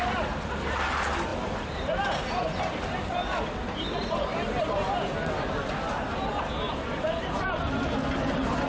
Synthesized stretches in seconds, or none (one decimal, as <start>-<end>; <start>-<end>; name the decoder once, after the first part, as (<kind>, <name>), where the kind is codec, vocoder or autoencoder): none